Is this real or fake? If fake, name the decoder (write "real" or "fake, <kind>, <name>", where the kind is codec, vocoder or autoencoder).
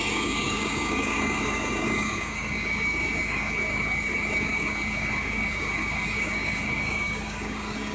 fake, codec, DAC